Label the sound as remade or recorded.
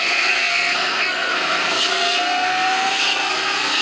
remade